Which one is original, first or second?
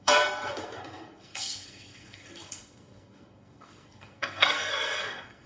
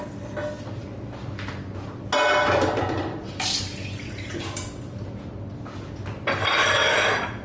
second